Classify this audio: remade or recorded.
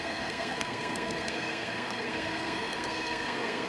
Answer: remade